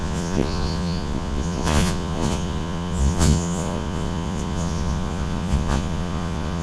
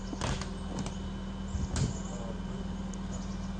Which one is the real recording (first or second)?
second